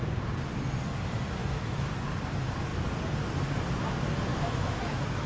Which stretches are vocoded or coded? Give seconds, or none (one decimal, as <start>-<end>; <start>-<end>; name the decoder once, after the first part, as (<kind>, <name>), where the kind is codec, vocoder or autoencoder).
1.4-1.9 (autoencoder, DAC-VAE); 4.3-5.3